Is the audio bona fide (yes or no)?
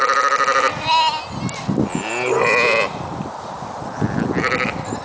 yes